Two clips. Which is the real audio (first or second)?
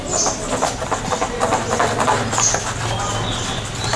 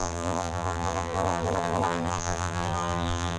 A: first